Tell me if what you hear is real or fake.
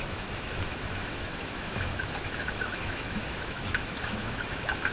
fake